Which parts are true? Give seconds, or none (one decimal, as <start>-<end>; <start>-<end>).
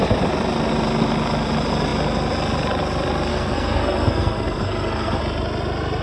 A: 0.0-3.3; 5.2-6.0